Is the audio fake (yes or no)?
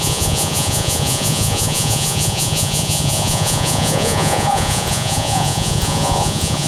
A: yes